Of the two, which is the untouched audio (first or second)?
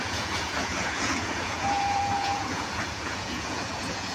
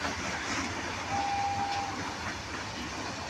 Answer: second